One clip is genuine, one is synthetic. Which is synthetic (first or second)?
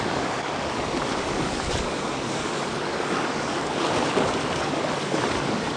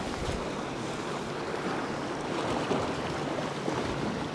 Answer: first